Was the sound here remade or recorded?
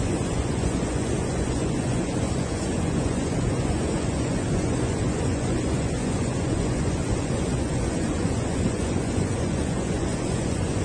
remade